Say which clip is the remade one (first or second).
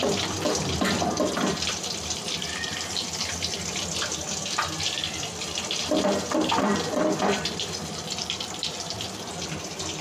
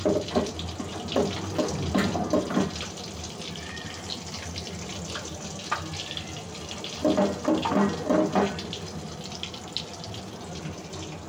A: first